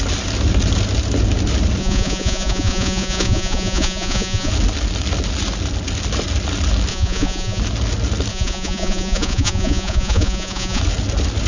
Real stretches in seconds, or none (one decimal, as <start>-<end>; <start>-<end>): 0.0-1.8; 4.5-6.9; 7.6-8.3; 10.8-11.5